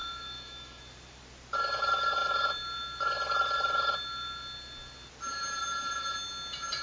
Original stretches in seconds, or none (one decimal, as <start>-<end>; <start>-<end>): 0.8-6.8